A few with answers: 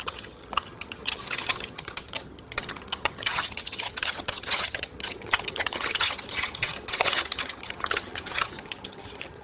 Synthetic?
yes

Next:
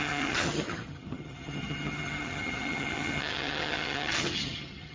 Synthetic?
yes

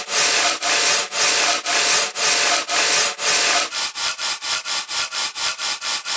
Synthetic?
no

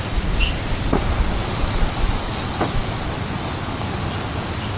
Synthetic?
no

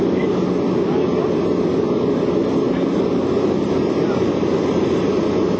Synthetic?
no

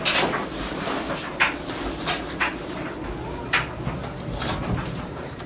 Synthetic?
no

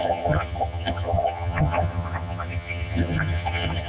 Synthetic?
yes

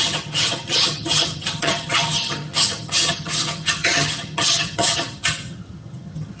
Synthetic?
yes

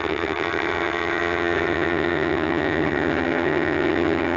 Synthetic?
yes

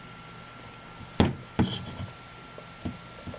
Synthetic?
no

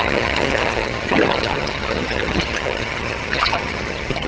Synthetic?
yes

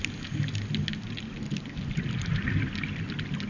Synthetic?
no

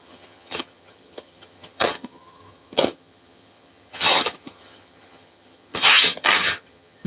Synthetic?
yes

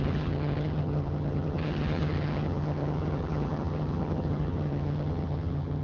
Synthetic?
yes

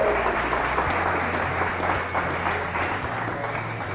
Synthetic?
no